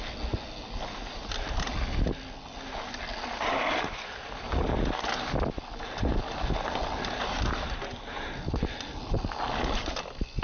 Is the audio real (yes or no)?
yes